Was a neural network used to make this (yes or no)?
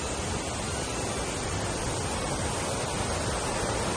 no